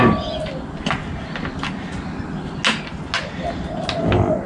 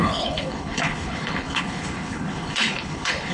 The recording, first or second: first